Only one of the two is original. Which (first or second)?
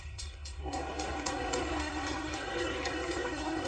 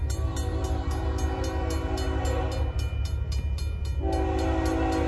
second